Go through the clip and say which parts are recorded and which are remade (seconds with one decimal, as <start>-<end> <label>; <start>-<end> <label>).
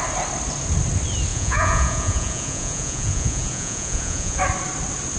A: 0.0-1.3 recorded; 1.3-4.4 remade; 4.4-5.2 recorded